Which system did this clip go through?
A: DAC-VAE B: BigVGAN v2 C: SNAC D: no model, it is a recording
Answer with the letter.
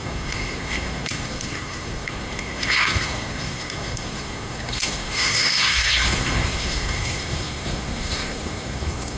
C